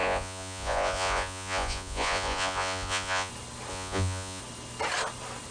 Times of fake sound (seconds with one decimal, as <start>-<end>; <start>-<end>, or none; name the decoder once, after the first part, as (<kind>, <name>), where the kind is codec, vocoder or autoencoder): 0.0-3.3 (vocoder, Vocos); 3.7-4.4